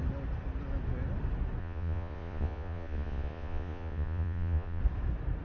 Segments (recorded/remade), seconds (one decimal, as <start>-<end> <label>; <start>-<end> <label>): 0.0-1.6 recorded; 1.6-4.8 remade; 4.8-5.4 recorded